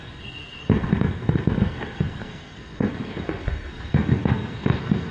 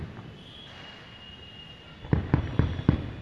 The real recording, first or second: second